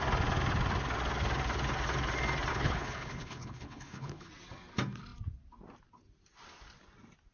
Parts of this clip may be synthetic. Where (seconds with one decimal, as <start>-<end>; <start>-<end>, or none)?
2.5-4.3

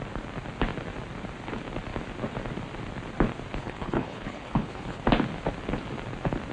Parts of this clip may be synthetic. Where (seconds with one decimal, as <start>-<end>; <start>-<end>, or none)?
3.6-5.0

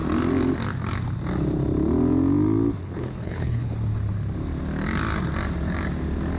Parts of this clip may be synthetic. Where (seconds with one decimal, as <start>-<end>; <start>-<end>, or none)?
2.8-3.7

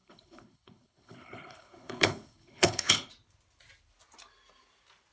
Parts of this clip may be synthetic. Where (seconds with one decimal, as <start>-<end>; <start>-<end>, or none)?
0.0-3.1